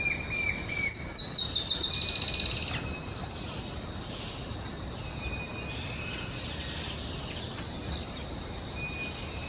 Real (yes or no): yes